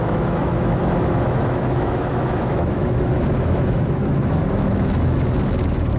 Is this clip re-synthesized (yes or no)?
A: yes